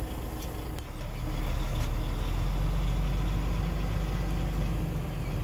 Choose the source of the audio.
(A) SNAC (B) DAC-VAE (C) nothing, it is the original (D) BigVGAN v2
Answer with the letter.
C